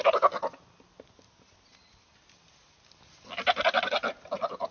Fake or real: real